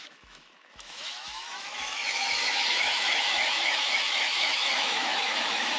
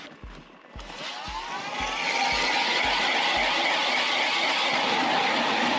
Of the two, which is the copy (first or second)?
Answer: first